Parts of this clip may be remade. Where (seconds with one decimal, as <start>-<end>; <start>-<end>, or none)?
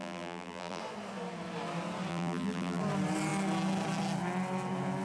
0.0-0.8; 2.1-2.8